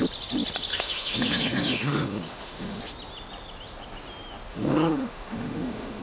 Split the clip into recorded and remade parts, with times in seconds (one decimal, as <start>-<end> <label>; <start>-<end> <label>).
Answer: 0.0-0.7 recorded; 0.7-2.8 remade; 2.8-4.5 recorded; 4.5-6.0 remade